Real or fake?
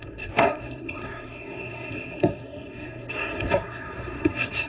fake